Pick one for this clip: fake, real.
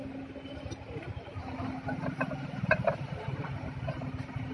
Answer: real